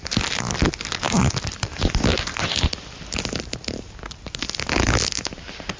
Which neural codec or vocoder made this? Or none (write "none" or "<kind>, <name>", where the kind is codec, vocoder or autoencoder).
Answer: none